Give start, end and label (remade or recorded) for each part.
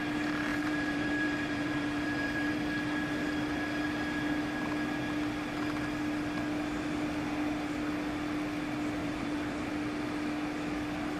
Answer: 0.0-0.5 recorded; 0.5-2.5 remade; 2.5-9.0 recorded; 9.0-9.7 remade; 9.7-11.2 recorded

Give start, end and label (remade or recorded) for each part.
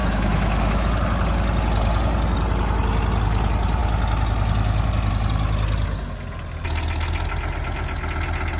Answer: 0.0-0.9 remade; 0.9-8.6 recorded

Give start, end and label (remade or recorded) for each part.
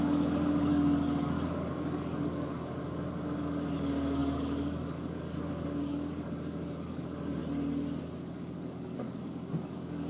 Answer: 0.0-7.4 remade; 7.4-8.0 recorded; 8.0-10.1 remade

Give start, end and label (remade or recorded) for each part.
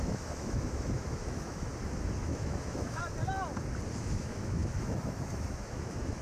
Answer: 0.0-1.7 remade; 1.7-2.2 recorded; 2.2-3.0 remade; 3.0-4.0 recorded; 4.0-6.2 remade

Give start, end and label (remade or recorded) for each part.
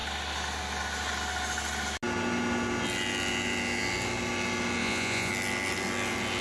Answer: 0.0-4.8 recorded; 4.8-5.3 remade; 5.3-6.4 recorded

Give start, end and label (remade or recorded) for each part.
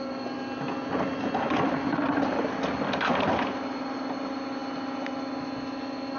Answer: 0.0-6.2 recorded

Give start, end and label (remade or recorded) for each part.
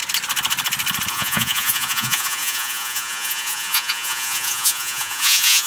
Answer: 0.0-1.1 recorded; 1.1-5.7 remade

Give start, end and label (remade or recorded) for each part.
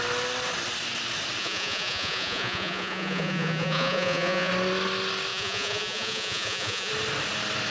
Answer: 0.0-1.4 recorded; 1.4-4.5 remade; 4.5-5.3 recorded; 5.3-6.9 remade; 6.9-7.7 recorded